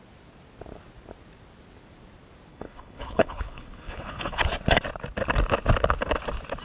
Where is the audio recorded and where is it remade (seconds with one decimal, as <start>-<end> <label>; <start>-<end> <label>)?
0.0-2.5 recorded; 2.5-4.4 remade; 4.4-6.6 recorded